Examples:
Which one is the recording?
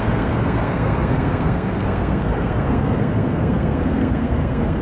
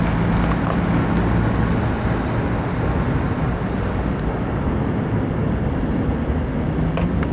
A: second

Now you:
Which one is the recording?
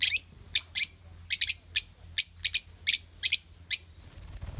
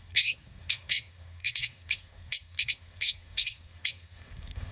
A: first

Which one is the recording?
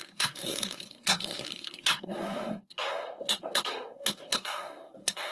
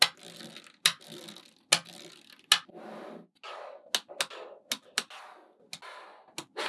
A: second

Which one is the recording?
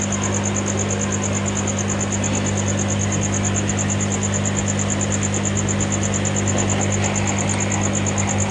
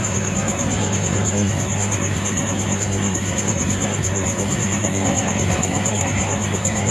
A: first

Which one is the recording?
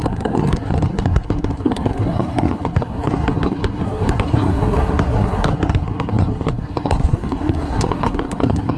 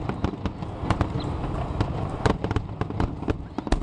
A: second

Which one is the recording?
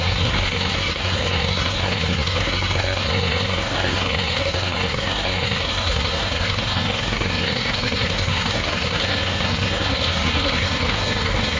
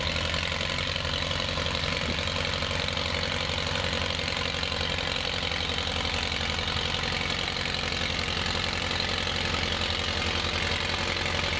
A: second